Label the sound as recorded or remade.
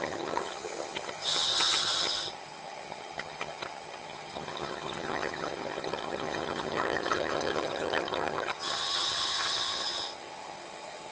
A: remade